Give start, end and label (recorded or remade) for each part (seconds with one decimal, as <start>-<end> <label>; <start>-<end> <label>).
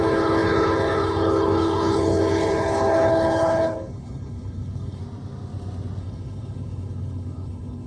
0.0-5.0 remade; 5.0-6.0 recorded; 6.0-7.9 remade